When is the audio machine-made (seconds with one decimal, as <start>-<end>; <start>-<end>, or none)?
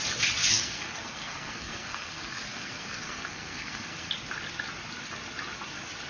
0.4-4.1